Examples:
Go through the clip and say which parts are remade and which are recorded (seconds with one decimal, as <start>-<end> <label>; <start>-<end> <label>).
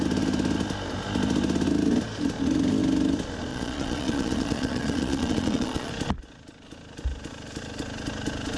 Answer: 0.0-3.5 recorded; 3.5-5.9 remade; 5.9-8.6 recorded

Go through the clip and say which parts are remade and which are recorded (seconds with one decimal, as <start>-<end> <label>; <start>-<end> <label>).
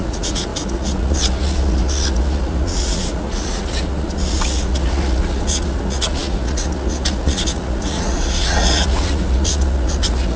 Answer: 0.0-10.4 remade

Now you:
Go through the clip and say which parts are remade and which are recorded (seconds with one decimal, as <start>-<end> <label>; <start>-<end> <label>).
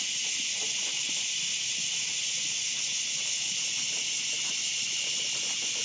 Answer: 0.0-0.6 recorded; 0.6-4.1 remade; 4.1-5.8 recorded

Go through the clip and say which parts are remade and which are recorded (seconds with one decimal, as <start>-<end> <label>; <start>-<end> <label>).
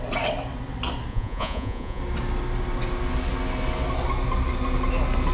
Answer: 0.0-1.1 recorded; 1.1-2.0 remade; 2.0-5.3 recorded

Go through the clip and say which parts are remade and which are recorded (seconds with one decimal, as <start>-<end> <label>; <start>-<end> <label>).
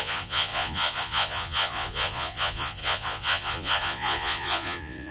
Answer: 0.0-5.1 remade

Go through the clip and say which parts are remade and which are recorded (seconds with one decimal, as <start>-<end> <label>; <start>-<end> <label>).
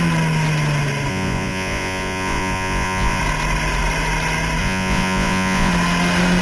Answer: 0.0-1.1 recorded; 1.1-3.2 remade; 3.2-4.6 recorded; 4.6-5.7 remade; 5.7-6.4 recorded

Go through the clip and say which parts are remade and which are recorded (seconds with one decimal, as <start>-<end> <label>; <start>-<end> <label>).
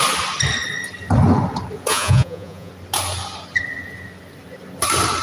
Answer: 0.0-1.9 recorded; 1.9-2.7 remade; 2.7-5.2 recorded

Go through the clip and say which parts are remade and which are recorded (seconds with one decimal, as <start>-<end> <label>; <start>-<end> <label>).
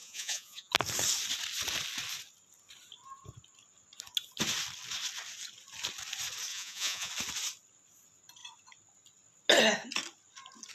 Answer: 0.0-0.7 remade; 0.7-6.5 recorded; 6.5-7.1 remade; 7.1-10.7 recorded